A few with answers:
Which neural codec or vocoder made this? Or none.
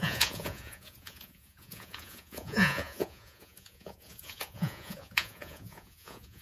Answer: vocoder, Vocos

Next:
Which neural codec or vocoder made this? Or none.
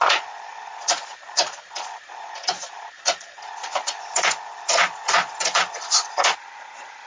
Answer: vocoder, Vocos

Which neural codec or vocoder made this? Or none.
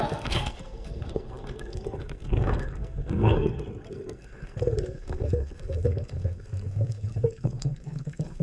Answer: codec, SNAC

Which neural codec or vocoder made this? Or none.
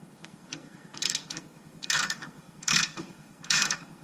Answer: codec, SNAC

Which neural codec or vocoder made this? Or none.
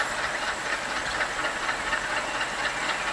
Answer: none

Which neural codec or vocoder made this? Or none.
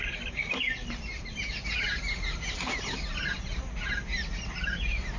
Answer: none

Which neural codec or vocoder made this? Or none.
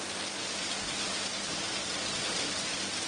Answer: vocoder, BigVGAN v2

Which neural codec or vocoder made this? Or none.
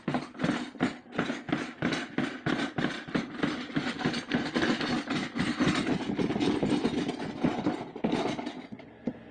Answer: none